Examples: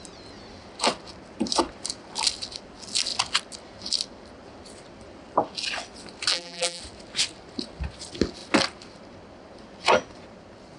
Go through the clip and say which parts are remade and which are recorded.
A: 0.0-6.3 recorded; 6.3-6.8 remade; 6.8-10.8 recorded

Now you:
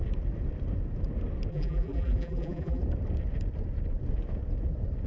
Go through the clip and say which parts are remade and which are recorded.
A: 0.0-1.5 recorded; 1.5-2.8 remade; 2.8-5.1 recorded

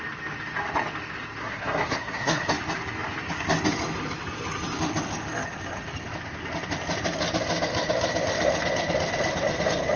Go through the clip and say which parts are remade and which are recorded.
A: 0.0-1.4 recorded; 1.4-2.5 remade; 2.5-10.0 recorded

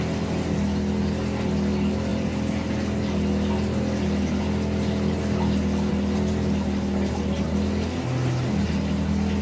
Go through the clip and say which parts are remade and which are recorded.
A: 0.0-9.4 recorded